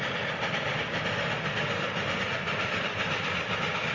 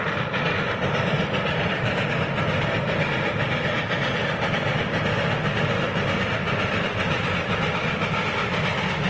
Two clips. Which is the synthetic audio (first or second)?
first